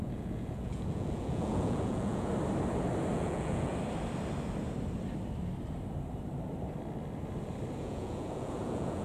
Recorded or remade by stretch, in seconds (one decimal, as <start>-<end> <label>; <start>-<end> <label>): 0.0-2.3 remade; 2.3-3.1 recorded; 3.1-3.7 remade; 3.7-7.8 recorded; 7.8-9.0 remade